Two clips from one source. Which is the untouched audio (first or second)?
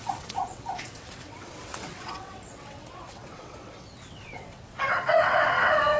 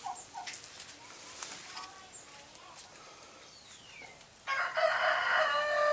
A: second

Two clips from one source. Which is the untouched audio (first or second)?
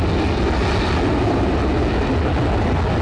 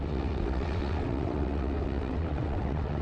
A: first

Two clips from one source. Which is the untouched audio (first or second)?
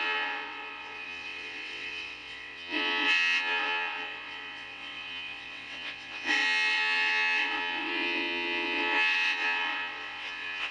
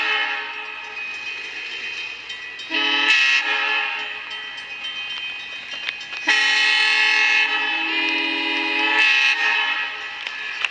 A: second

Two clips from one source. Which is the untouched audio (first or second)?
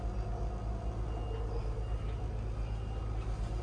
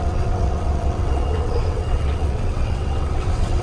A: first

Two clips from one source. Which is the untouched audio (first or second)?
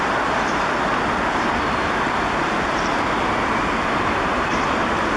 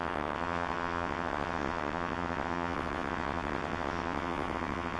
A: first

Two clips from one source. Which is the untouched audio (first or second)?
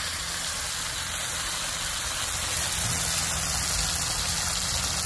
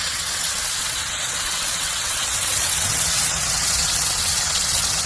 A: first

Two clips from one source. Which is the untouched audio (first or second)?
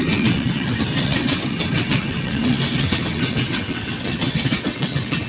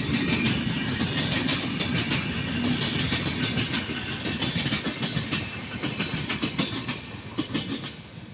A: second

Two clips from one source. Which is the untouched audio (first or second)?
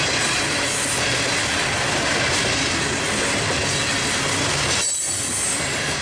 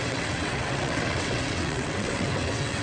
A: first